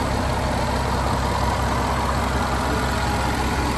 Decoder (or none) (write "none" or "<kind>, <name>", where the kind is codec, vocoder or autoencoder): none